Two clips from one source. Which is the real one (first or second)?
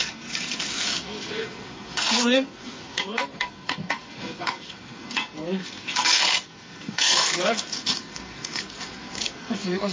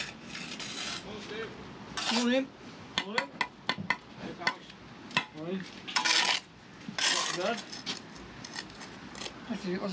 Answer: second